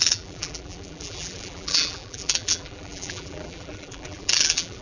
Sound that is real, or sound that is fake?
fake